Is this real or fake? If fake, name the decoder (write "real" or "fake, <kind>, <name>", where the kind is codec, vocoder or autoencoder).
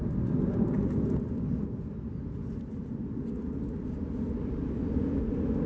real